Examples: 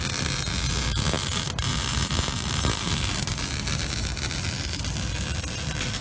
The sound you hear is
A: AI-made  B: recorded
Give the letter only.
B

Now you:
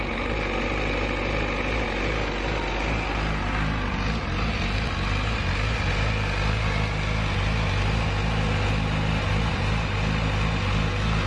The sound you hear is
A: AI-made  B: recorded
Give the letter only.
B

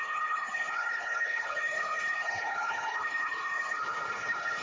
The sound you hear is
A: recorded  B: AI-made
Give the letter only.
B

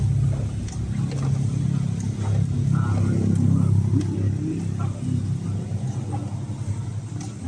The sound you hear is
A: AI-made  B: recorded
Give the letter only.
B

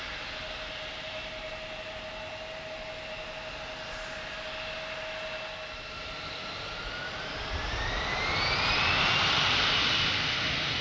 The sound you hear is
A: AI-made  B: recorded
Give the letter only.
B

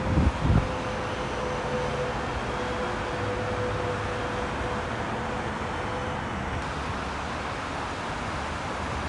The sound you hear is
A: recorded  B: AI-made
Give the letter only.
A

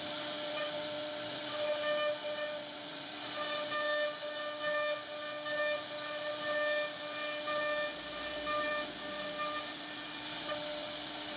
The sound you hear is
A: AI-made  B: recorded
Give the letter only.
B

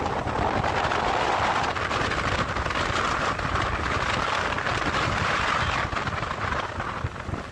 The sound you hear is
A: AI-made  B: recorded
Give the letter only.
B